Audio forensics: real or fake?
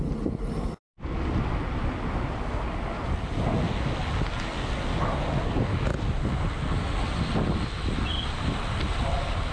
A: real